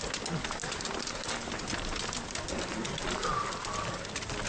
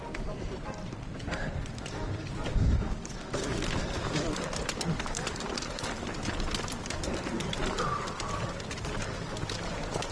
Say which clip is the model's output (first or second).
second